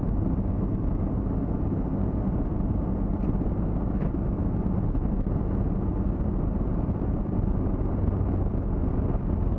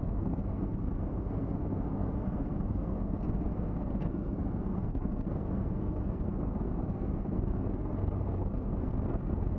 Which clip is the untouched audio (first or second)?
first